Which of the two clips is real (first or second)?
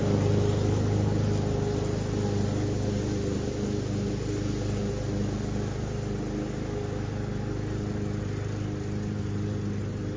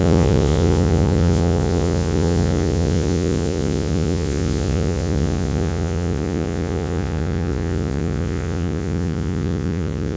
first